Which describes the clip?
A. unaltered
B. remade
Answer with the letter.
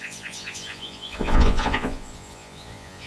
B